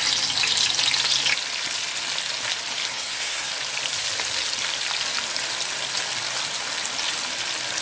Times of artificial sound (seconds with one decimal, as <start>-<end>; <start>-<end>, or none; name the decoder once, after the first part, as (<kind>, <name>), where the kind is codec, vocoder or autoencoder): 2.9-3.5 (codec, SNAC)